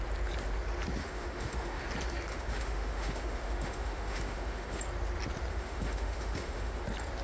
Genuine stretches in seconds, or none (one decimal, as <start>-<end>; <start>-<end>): 0.0-1.0; 1.8-2.3; 4.8-5.5; 6.8-7.2